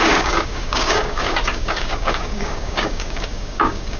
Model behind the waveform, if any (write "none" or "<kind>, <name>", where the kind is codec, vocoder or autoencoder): codec, DAC